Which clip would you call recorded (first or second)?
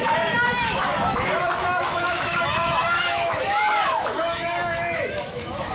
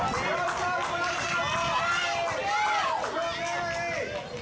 second